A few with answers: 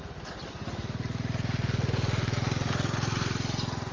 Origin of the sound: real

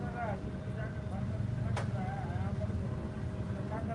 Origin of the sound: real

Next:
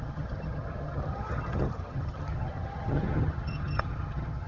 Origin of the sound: fake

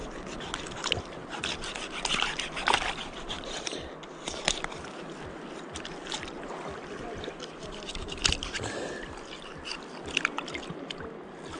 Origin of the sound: real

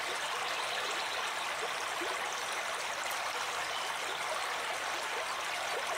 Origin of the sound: real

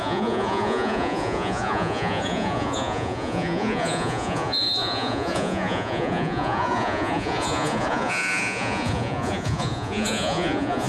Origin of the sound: fake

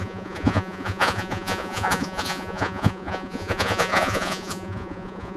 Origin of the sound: fake